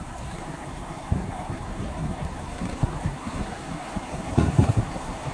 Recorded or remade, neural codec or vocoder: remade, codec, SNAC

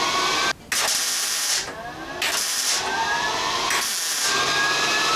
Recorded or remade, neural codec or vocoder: recorded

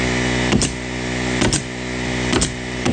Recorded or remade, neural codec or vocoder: recorded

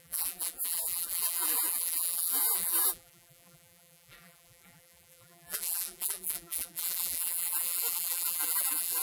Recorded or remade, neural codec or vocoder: remade, vocoder, BigVGAN v2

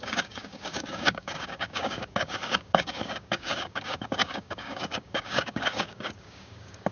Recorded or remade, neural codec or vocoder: remade, codec, DAC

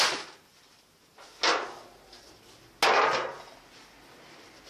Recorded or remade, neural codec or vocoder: recorded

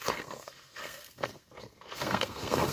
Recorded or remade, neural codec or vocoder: remade, codec, SNAC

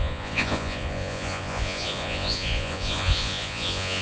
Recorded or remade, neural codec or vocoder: remade, vocoder, Vocos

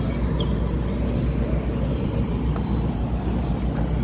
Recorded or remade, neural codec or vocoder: recorded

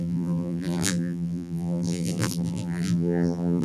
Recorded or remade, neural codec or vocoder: remade, vocoder, BigVGAN v2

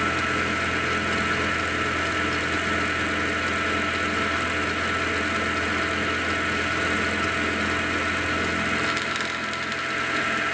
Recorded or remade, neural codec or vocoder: recorded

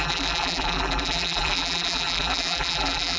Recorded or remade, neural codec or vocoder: remade, vocoder, BigVGAN v2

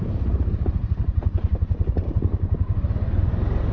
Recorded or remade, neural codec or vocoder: recorded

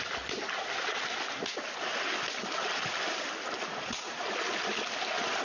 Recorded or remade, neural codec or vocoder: recorded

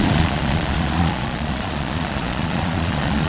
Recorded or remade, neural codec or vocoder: remade, vocoder, Vocos